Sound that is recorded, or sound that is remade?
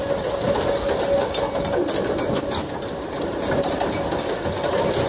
recorded